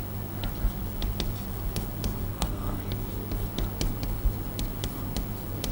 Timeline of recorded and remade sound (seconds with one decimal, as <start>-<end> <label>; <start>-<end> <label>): 0.0-2.3 recorded; 2.3-2.9 remade; 2.9-5.7 recorded